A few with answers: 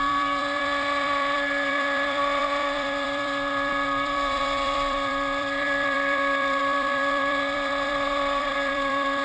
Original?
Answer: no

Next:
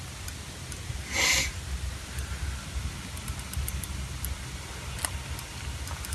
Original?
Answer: yes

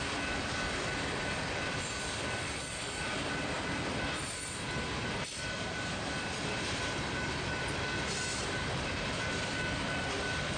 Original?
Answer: no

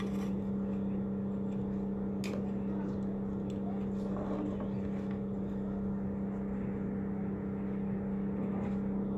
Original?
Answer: yes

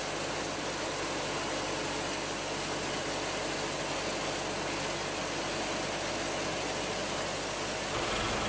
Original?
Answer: yes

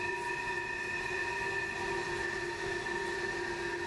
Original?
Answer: yes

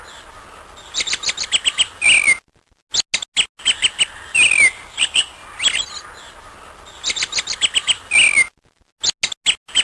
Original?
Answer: yes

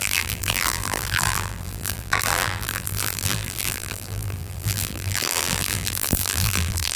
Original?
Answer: no